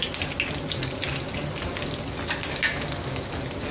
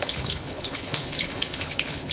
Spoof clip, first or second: second